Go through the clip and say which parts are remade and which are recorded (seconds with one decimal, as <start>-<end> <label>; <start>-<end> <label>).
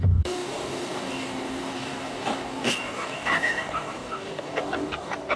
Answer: 0.0-5.4 remade